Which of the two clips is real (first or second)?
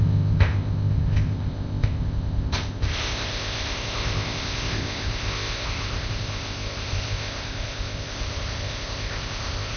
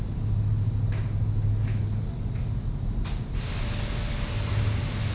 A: second